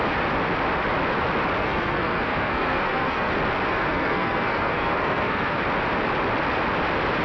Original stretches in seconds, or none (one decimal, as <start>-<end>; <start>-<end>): 0.0-1.6; 3.3-3.7; 5.6-7.2